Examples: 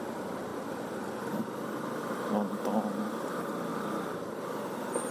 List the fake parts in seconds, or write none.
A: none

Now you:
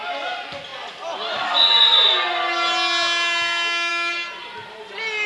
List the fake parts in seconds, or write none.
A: none

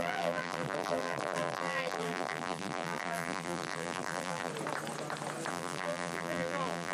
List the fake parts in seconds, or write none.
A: 0.0-4.5 (vocoder, BigVGAN v2); 5.5-6.9

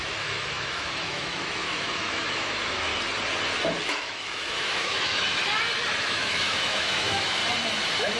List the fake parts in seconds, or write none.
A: 0.0-2.9 (autoencoder, DAC-VAE); 3.8-5.4; 6.0-7.4

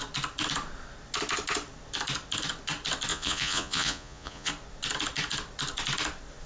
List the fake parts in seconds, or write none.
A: 3.1-4.5 (vocoder, Vocos)

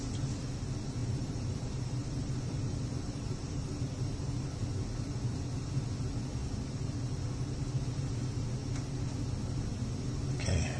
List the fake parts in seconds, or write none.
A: 1.0-4.4 (vocoder, BigVGAN v2)

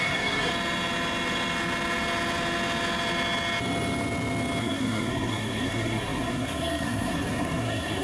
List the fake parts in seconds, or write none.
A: 0.0-0.5 (codec, SNAC); 4.6-8.0

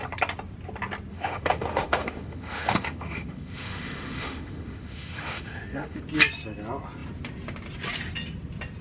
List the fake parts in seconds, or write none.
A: 1.1-6.0 (autoencoder, DAC-VAE)